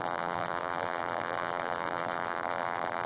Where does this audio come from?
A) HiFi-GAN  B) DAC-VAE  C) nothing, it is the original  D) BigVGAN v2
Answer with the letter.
D